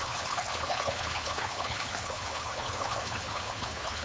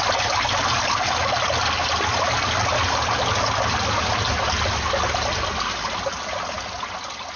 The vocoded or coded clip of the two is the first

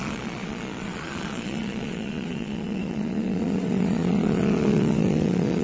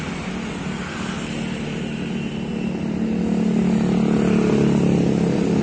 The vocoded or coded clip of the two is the first